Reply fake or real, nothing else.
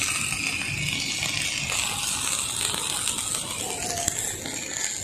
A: real